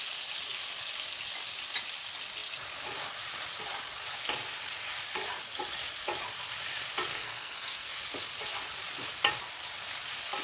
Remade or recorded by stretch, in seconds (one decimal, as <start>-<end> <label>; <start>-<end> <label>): 0.0-7.1 recorded; 7.1-8.0 remade; 8.0-10.4 recorded